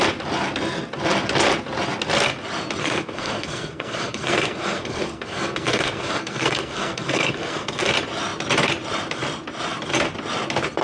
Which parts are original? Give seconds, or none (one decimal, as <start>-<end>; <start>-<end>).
0.0-2.8; 7.9-10.8